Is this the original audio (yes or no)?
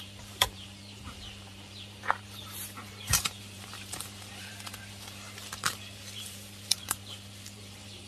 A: no